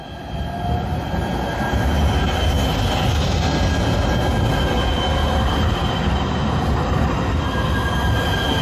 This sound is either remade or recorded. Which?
recorded